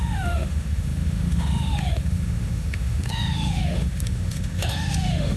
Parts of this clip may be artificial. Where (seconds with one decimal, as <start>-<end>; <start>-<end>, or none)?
0.0-5.4